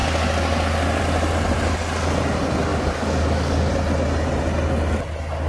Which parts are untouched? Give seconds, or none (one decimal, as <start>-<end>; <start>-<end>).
0.0-2.7; 3.7-5.5